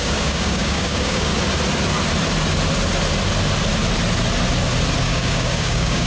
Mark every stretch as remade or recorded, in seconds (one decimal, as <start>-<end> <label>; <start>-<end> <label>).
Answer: 0.0-1.3 remade; 1.3-5.0 recorded; 5.0-6.1 remade

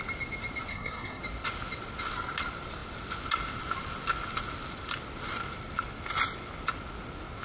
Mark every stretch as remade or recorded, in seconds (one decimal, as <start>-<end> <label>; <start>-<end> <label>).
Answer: 0.0-0.7 recorded; 0.7-1.2 remade; 1.2-7.4 recorded

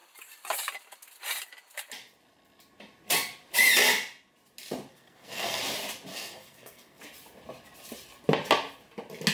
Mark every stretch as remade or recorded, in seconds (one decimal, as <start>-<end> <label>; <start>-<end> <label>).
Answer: 0.0-4.9 recorded; 4.9-5.6 remade; 5.6-6.1 recorded; 6.1-7.0 remade; 7.0-9.3 recorded

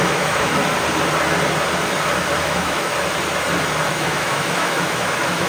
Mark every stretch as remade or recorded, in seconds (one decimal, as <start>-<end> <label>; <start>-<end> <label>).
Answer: 0.0-0.6 remade; 0.6-2.4 recorded; 2.4-2.9 remade; 2.9-3.9 recorded; 3.9-5.5 remade